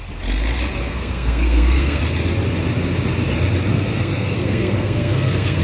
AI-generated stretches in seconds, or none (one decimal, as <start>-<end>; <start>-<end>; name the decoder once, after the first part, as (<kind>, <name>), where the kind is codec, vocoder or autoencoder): 0.9-2.0 (codec, SNAC); 3.7-5.6